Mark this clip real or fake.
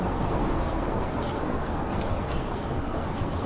fake